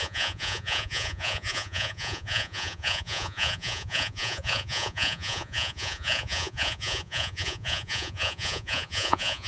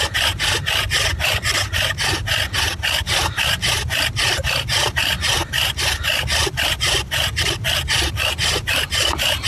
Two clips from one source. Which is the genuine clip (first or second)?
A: second